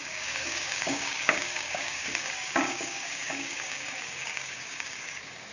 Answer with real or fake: fake